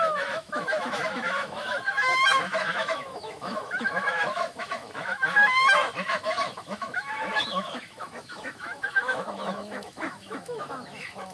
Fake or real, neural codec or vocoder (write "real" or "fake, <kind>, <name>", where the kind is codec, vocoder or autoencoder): fake, autoencoder, DAC-VAE